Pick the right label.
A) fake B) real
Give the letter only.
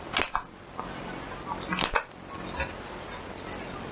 B